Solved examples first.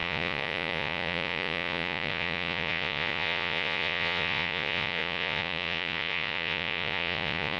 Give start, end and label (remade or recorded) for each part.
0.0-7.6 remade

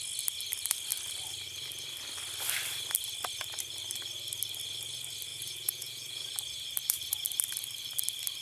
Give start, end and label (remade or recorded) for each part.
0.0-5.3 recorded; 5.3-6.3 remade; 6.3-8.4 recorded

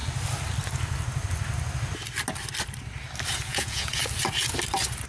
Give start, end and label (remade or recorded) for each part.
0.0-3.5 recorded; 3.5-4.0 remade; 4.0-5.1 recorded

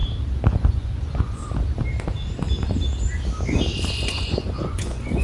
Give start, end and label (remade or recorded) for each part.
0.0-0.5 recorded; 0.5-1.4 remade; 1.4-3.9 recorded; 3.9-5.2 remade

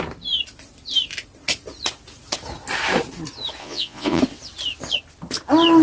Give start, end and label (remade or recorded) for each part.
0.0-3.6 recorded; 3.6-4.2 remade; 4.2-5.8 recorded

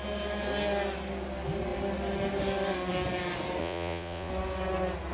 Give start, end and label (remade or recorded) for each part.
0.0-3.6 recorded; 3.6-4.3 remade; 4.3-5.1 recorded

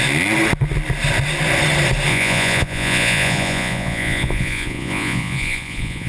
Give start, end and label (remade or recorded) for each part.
0.0-2.1 recorded; 2.1-6.1 remade